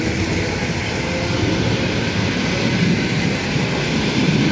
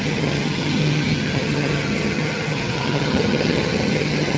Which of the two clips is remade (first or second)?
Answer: second